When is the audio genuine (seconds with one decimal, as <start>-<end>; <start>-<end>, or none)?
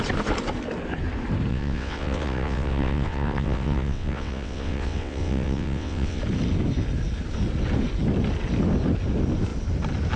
0.0-1.5; 6.2-10.2